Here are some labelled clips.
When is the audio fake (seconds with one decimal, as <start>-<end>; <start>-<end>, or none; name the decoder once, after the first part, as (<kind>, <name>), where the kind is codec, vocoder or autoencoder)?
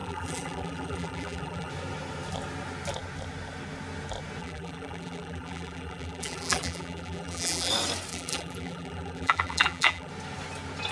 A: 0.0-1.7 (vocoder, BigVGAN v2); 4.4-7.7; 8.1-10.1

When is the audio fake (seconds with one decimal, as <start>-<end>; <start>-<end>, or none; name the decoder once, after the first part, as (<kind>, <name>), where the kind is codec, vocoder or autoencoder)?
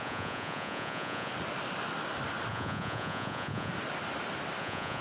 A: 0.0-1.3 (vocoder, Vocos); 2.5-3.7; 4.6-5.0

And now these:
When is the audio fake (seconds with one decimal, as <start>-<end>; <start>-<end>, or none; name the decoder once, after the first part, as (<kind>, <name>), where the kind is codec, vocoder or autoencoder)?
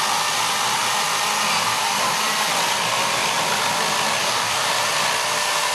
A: 4.2-4.7 (codec, DAC)